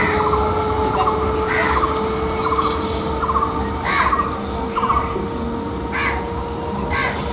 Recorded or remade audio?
recorded